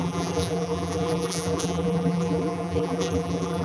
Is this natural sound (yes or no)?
no